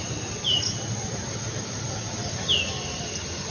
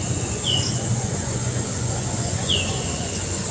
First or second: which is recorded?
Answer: first